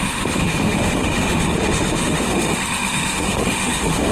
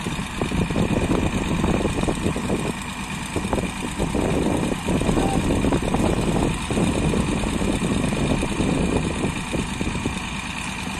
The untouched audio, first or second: second